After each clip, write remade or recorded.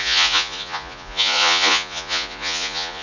remade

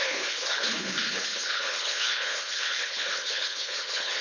remade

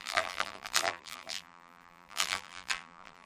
remade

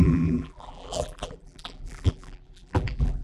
remade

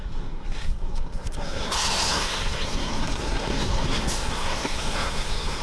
remade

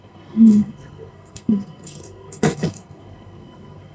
remade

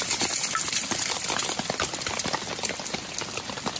recorded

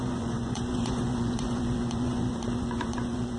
remade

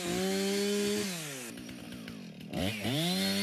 recorded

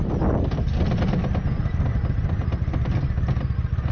recorded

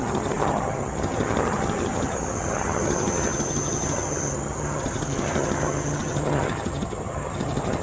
remade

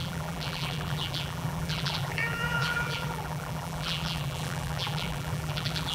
remade